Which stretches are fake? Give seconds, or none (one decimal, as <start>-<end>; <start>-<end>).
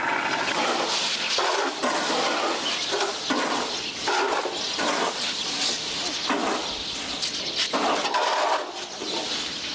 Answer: none